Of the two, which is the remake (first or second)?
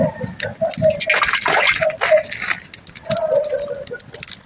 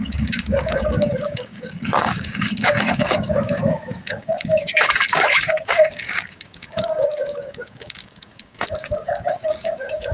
second